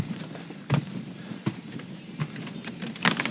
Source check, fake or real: real